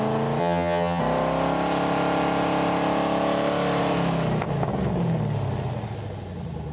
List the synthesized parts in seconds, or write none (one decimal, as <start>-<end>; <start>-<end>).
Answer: 0.4-1.0